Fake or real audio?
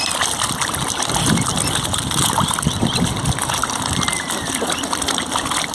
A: real